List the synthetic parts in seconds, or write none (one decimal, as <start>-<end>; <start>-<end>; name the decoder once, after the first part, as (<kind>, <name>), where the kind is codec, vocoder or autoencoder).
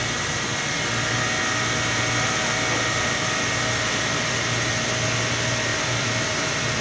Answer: 1.9-4.7 (vocoder, BigVGAN v2); 5.7-6.8